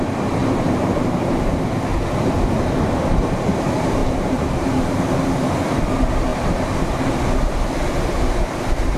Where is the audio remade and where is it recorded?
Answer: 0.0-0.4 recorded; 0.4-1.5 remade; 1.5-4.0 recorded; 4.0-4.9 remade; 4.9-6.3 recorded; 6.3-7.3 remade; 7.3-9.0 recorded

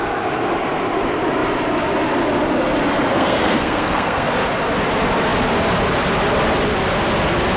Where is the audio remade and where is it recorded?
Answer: 0.0-3.1 recorded; 3.1-4.3 remade; 4.3-7.6 recorded

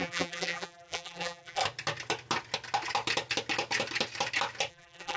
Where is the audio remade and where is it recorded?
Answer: 0.0-1.6 remade; 1.6-4.7 recorded; 4.7-5.2 remade

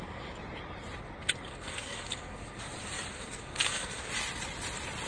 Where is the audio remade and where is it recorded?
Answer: 0.0-1.5 recorded; 1.5-2.7 remade; 2.7-3.1 recorded; 3.1-4.1 remade; 4.1-5.1 recorded

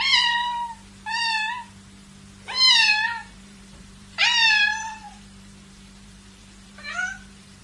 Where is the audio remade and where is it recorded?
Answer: 0.0-3.2 recorded; 3.2-7.6 remade

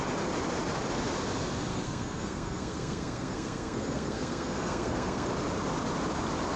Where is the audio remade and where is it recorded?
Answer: 0.0-1.7 recorded; 1.7-5.3 remade; 5.3-6.6 recorded

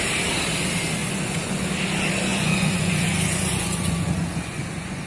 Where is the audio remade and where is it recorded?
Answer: 0.0-1.0 recorded; 1.0-1.6 remade; 1.6-2.3 recorded; 2.3-5.1 remade